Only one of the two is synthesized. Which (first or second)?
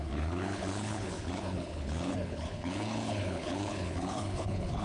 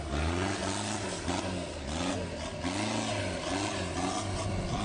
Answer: first